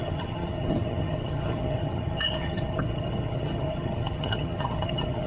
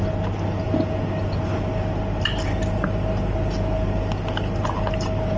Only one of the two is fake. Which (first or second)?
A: first